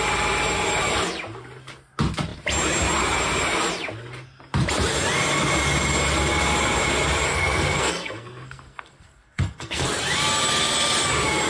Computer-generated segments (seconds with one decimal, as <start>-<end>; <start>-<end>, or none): 7.3-10.0